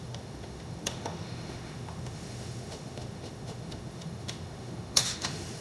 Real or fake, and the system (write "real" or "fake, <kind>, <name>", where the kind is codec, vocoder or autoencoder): fake, autoencoder, DAC-VAE